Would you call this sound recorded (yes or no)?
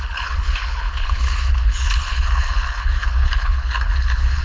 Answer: no